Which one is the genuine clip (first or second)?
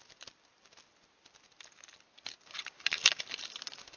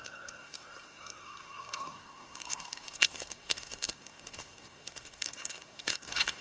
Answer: first